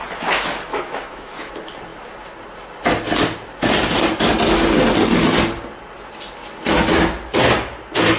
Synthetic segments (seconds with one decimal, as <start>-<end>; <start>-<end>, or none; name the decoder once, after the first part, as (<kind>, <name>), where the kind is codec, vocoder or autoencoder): 0.7-1.5 (autoencoder, DAC-VAE)

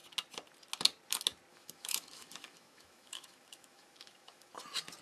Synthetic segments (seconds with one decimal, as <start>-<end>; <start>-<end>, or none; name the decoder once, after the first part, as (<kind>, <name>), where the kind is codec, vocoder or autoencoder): 1.5-4.5 (autoencoder, DAC-VAE)

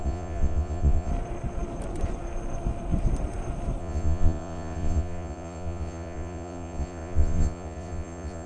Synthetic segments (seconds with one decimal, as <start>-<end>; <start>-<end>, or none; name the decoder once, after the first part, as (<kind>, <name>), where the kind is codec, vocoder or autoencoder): 0.0-1.1 (vocoder, Vocos); 3.8-8.5